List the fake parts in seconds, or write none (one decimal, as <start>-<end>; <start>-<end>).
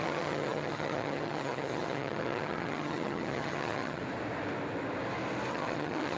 0.0-4.0; 5.5-6.2